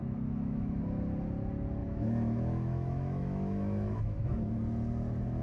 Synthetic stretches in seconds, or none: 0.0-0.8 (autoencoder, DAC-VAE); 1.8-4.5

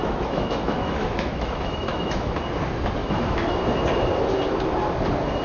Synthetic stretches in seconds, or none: 0.0-2.3 (autoencoder, DAC-VAE); 3.0-3.5

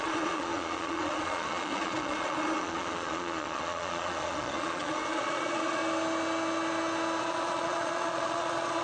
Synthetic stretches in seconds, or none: 0.0-5.8 (vocoder, Vocos); 7.2-8.8

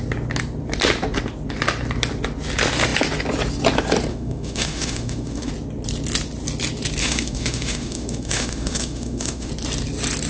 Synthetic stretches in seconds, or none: 4.1-5.5 (autoencoder, DAC-VAE); 7.0-9.5

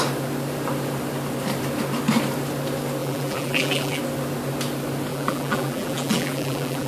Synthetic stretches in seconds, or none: 3.0-4.0 (vocoder, BigVGAN v2); 5.1-6.9